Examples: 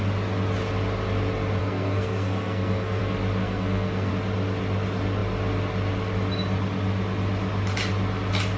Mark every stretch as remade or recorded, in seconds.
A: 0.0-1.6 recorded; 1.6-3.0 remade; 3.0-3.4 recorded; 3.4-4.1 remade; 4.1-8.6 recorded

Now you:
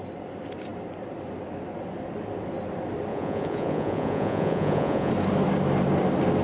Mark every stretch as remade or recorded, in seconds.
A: 0.0-3.1 recorded; 3.1-5.1 remade; 5.1-6.4 recorded

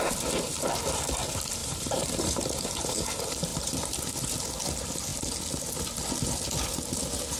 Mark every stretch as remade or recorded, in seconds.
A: 0.0-1.6 recorded; 1.6-3.0 remade; 3.0-3.5 recorded; 3.5-4.0 remade; 4.0-7.4 recorded

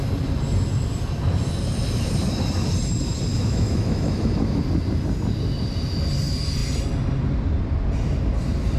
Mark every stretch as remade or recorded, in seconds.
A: 0.0-3.3 recorded; 3.3-4.6 remade; 4.6-8.8 recorded

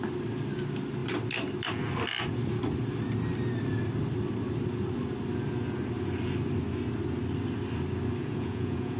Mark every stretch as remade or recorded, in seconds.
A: 0.0-8.2 recorded; 8.2-9.0 remade